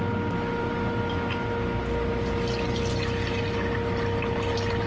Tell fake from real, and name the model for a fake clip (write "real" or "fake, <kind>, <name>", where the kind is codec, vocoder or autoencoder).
real